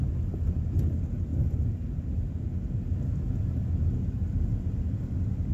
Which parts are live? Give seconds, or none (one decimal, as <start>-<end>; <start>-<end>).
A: 0.0-5.5